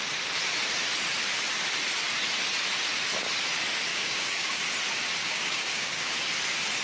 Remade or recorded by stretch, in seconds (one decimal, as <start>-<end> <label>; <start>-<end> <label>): 0.0-3.9 recorded; 3.9-4.6 remade; 4.6-5.2 recorded; 5.2-6.1 remade; 6.1-6.8 recorded

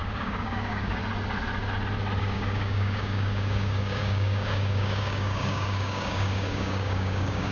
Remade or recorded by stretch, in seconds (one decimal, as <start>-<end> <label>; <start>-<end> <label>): 0.0-1.0 remade; 1.0-2.2 recorded; 2.2-7.5 remade

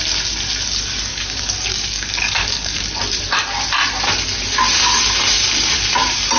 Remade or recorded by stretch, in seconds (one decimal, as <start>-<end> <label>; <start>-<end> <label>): 0.0-1.1 recorded; 1.1-2.8 remade; 2.8-6.4 recorded

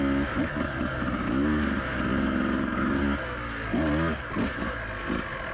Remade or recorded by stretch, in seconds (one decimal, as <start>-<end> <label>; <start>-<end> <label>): 0.0-2.1 recorded; 2.1-3.0 remade; 3.0-5.5 recorded

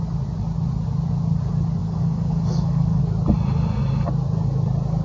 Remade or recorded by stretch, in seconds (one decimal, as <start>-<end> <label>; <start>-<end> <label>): 0.0-1.8 recorded; 1.8-3.0 remade; 3.0-5.0 recorded

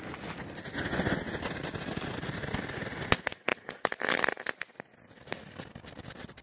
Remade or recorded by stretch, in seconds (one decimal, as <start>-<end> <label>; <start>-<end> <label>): 0.0-6.4 recorded

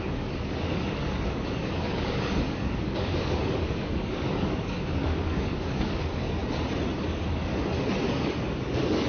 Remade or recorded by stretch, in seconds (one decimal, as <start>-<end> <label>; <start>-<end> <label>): 0.0-6.4 remade; 6.4-7.0 recorded; 7.0-7.5 remade; 7.5-8.1 recorded; 8.1-9.1 remade